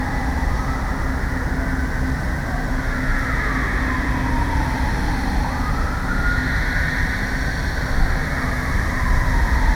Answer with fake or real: real